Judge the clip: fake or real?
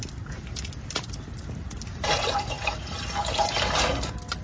real